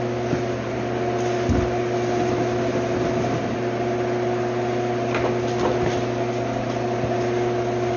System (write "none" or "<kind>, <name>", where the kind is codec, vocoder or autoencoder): none